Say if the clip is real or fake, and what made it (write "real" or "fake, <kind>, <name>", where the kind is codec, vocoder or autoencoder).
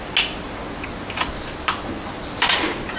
real